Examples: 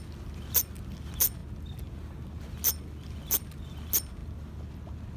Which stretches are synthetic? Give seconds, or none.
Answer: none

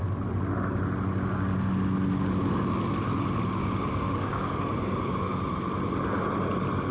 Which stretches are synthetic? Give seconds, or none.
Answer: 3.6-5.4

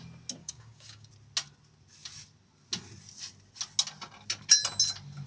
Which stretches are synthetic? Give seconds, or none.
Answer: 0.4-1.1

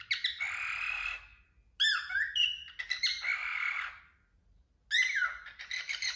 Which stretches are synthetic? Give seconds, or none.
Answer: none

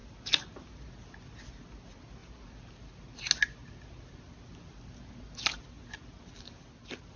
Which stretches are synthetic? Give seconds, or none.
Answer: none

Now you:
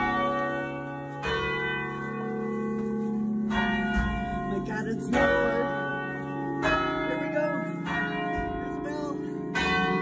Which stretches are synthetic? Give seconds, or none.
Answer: none